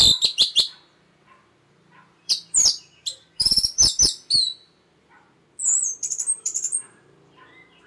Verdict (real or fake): fake